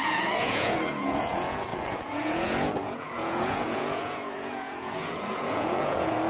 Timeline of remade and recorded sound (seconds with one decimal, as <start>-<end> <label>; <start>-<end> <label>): 0.0-6.3 remade